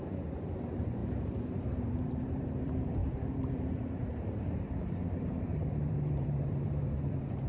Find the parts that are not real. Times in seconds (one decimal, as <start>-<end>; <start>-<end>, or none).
0.0-7.5